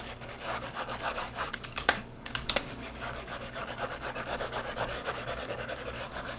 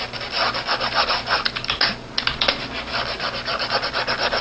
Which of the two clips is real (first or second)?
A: second